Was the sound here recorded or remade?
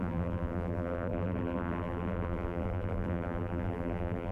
remade